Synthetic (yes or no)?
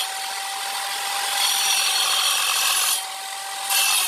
no